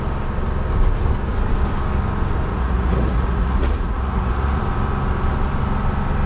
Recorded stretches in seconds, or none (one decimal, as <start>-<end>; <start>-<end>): 0.0-2.5; 4.6-6.3